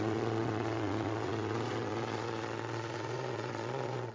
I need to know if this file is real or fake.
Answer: fake